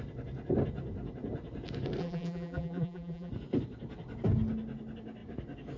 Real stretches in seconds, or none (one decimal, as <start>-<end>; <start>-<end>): 0.0-2.0; 3.3-5.8